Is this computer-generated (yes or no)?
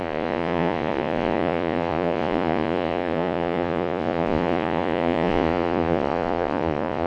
yes